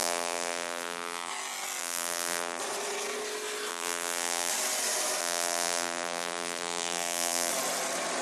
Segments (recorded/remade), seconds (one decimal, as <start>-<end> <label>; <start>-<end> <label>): 0.0-1.3 remade; 1.3-1.8 recorded; 1.8-2.6 remade; 2.6-3.7 recorded; 3.7-4.5 remade; 4.5-5.2 recorded; 5.2-7.5 remade; 7.5-8.2 recorded